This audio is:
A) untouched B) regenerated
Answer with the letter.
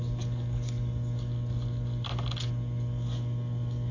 A